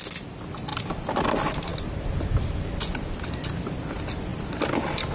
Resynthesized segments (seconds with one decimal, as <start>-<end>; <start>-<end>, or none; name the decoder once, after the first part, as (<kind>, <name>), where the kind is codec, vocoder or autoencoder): none